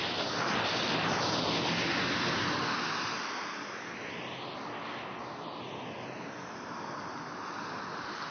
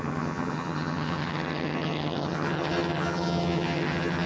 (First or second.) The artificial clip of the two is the second